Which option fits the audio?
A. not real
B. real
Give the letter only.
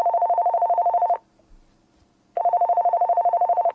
A